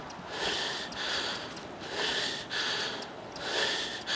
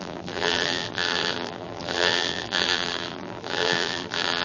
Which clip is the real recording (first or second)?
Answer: first